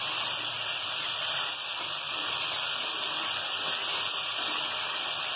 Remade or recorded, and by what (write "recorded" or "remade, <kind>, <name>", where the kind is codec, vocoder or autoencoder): recorded